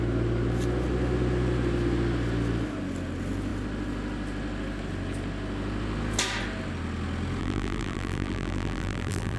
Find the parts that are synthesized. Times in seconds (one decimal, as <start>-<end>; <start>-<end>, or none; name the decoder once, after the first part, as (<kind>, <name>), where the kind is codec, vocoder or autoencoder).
7.4-9.4 (vocoder, BigVGAN v2)

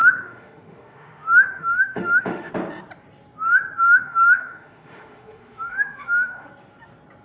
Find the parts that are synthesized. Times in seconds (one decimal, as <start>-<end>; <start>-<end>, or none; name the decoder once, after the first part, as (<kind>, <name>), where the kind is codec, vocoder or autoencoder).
0.0-2.5 (autoencoder, DAC-VAE); 3.8-6.5

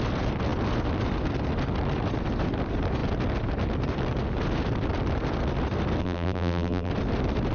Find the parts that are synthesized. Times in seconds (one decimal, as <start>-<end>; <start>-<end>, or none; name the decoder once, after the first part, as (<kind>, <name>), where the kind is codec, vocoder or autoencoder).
6.0-6.9 (vocoder, BigVGAN v2)

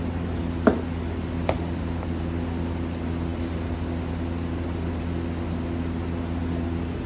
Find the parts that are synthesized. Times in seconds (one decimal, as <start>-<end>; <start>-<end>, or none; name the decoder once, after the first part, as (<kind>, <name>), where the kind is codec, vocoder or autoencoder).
none

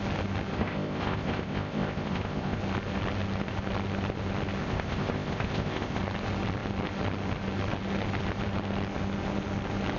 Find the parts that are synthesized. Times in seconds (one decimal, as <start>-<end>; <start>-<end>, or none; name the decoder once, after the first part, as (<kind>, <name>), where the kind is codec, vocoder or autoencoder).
0.5-2.6 (codec, ZipCodec); 4.6-6.0